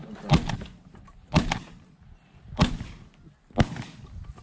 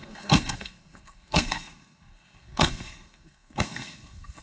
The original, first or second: first